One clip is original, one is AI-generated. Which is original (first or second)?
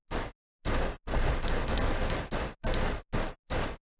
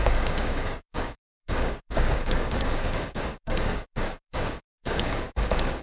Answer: first